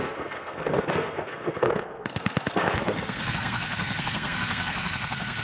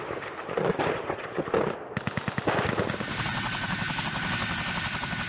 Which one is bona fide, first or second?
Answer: second